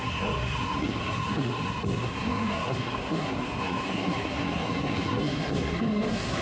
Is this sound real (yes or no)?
no